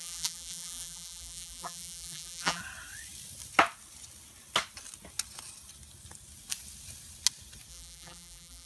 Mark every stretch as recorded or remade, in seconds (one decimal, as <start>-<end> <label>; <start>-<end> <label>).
0.0-2.6 remade; 2.6-7.7 recorded; 7.7-8.7 remade

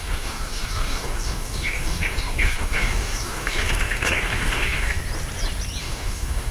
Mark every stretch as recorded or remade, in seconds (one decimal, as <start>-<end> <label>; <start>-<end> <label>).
0.0-5.0 remade; 5.0-5.8 recorded; 5.8-6.5 remade

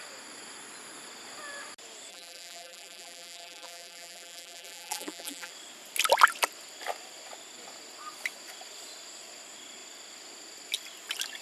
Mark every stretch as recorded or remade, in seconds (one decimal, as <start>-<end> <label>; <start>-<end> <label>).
0.0-2.1 recorded; 2.1-5.5 remade; 5.5-11.4 recorded

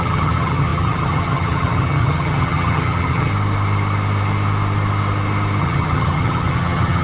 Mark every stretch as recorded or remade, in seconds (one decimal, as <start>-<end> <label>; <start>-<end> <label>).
0.0-3.3 remade; 3.3-5.6 recorded; 5.6-7.0 remade

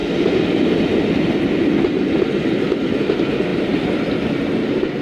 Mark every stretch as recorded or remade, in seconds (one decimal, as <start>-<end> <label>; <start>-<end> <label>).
0.0-3.5 recorded; 3.5-5.0 remade

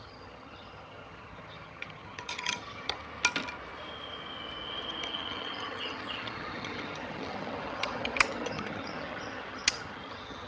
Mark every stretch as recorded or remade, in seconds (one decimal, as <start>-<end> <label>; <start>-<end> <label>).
0.0-3.0 remade; 3.0-5.1 recorded; 5.1-10.5 remade